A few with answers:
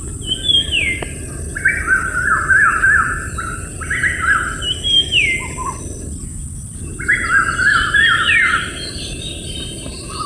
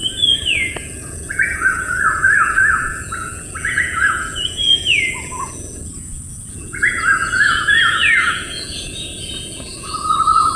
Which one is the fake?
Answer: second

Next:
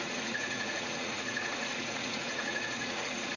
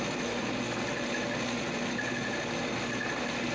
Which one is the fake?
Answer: first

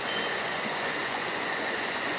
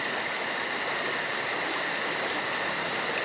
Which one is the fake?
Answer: first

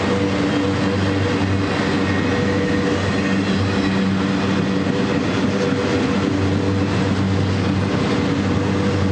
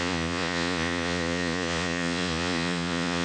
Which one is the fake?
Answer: second